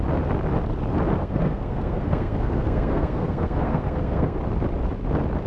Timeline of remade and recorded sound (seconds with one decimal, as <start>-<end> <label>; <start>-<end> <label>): 0.0-1.2 recorded; 1.2-4.4 remade; 4.4-5.5 recorded